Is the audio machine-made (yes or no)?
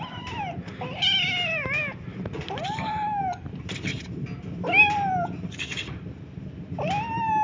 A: no